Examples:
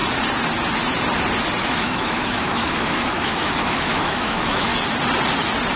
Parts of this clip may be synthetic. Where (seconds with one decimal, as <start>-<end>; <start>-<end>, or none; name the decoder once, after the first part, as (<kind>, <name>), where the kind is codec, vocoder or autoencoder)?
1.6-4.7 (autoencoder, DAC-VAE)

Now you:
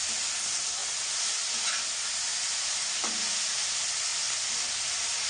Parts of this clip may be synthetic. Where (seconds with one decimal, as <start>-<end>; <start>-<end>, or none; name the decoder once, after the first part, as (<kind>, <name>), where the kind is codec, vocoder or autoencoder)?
4.1-4.8 (vocoder, BigVGAN v2)

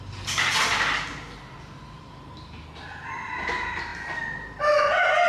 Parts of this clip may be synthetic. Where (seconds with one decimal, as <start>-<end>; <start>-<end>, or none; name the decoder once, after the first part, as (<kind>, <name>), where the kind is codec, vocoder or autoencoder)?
none

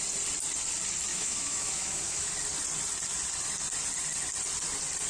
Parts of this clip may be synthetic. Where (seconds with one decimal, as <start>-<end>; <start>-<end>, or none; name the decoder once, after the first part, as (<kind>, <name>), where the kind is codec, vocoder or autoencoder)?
1.1-2.3 (autoencoder, DAC-VAE)